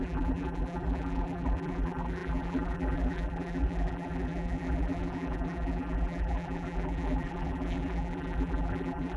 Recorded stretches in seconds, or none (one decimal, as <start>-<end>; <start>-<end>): none